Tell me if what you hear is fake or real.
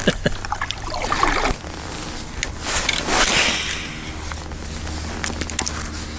real